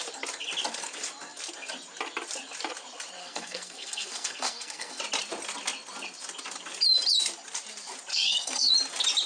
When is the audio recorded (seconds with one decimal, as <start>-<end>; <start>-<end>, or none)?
0.0-3.2; 5.0-8.1; 8.7-9.3